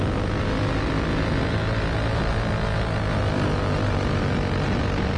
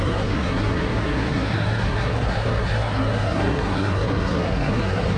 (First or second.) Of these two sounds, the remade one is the second